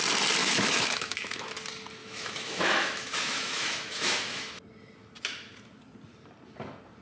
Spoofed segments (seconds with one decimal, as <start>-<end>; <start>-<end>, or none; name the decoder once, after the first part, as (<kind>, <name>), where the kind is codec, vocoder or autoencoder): 0.4-1.5 (autoencoder, DAC-VAE); 2.0-4.6